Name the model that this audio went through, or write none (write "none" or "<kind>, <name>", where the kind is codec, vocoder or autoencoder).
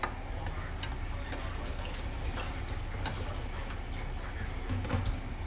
none